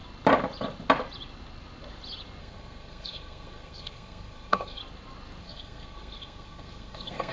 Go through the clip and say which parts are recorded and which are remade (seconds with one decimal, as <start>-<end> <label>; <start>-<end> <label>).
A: 0.0-2.4 recorded; 2.4-4.8 remade; 4.8-5.4 recorded; 5.4-7.3 remade